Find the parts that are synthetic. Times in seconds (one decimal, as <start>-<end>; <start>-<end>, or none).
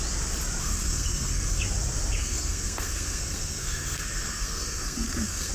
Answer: 0.6-1.6; 2.2-5.5